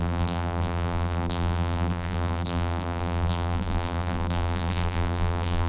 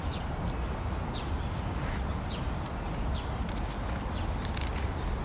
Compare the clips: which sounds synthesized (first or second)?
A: first